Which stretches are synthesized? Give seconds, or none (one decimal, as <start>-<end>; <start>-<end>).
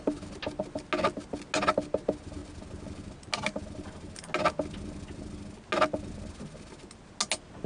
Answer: none